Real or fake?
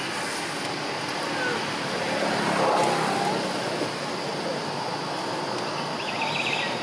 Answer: real